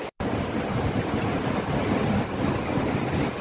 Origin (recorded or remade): recorded